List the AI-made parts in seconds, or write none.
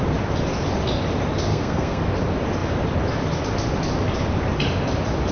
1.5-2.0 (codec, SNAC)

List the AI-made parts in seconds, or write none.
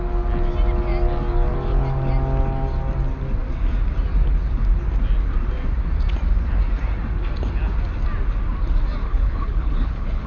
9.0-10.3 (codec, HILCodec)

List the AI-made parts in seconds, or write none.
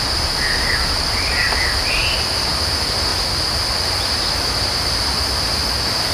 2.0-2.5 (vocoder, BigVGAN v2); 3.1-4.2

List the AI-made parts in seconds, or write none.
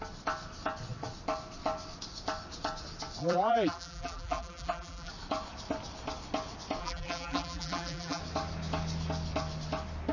3.2-5.1 (vocoder, BigVGAN v2); 6.8-8.2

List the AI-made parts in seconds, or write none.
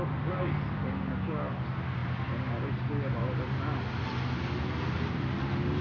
none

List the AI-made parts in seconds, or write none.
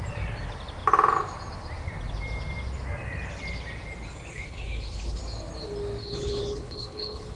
4.3-5.2 (codec, HILCodec); 6.0-7.4